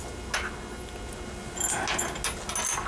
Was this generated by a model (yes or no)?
no